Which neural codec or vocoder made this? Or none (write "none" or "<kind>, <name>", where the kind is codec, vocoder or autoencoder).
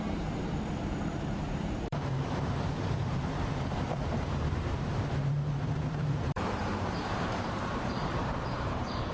vocoder, BigVGAN v2